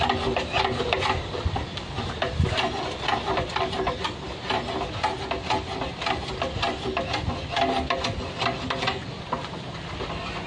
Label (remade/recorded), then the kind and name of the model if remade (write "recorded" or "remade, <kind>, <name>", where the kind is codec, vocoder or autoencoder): recorded